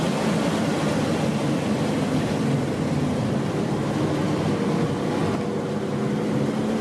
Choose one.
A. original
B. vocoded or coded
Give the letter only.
A